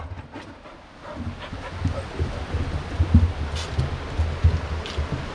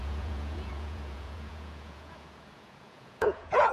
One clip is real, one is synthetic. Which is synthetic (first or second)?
second